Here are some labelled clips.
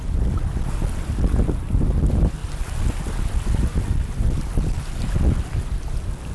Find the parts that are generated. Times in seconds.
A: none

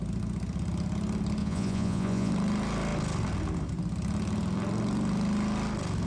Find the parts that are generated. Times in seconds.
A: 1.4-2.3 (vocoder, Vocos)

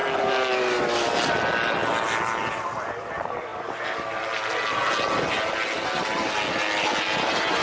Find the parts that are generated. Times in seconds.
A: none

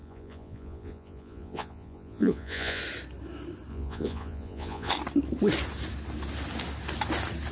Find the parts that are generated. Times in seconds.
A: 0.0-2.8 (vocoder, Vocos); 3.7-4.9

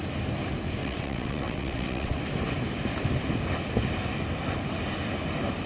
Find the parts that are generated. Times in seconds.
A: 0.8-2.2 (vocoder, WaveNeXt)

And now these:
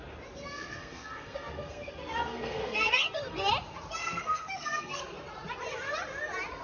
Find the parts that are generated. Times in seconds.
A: 0.5-3.5 (codec, SNAC); 4.0-5.0

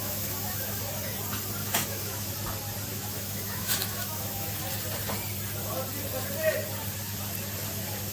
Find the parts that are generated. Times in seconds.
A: 0.0-0.8 (autoencoder, DAC-VAE); 1.6-2.3; 2.9-4.6